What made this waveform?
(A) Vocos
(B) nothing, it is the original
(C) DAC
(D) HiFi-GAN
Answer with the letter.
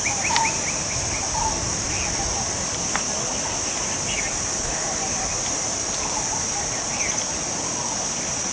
B